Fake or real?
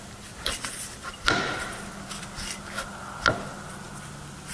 real